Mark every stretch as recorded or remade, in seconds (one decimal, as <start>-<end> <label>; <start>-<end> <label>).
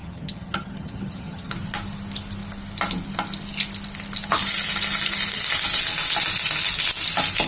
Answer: 0.0-1.5 remade; 1.5-7.5 recorded